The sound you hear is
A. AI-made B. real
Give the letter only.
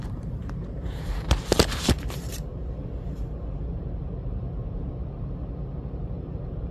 A